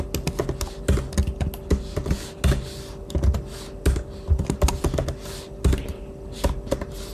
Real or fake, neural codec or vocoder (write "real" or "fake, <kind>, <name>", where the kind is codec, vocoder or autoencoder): real